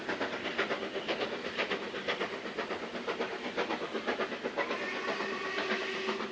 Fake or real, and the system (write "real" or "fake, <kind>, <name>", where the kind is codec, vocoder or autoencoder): real